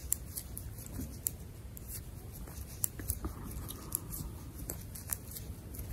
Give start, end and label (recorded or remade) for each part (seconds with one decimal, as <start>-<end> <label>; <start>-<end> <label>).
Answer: 0.0-5.9 recorded